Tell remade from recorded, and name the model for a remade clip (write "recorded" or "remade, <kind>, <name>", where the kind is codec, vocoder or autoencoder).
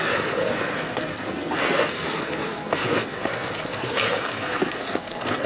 remade, codec, SNAC